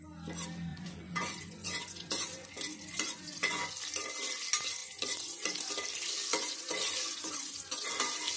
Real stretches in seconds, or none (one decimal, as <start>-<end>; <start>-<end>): 0.0-0.7; 3.7-4.8; 5.7-6.3; 7.9-8.4